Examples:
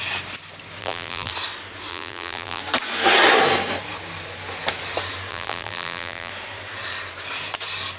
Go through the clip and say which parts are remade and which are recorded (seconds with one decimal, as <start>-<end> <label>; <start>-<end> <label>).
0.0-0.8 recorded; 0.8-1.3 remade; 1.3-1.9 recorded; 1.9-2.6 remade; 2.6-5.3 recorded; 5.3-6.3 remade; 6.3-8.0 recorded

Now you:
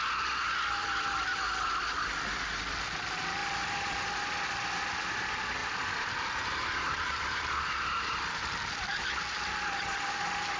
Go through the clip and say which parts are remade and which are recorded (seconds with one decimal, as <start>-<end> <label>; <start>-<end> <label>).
0.0-0.8 recorded; 0.8-1.8 remade; 1.8-5.6 recorded; 5.6-7.6 remade; 7.6-10.6 recorded

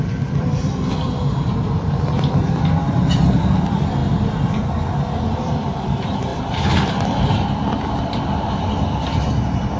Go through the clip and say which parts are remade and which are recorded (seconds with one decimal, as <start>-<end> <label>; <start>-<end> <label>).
0.0-4.0 remade; 4.0-5.3 recorded; 5.3-9.8 remade